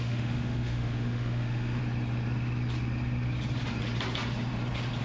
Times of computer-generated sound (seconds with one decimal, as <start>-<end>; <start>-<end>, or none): 0.0-1.8